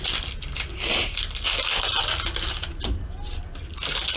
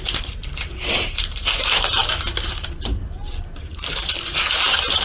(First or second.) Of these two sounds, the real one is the first